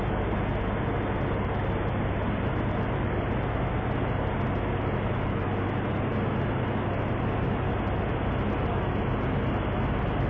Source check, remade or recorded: recorded